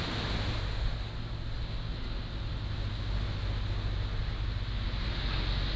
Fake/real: real